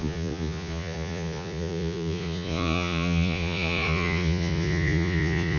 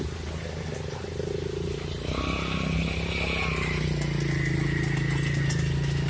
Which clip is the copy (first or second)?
first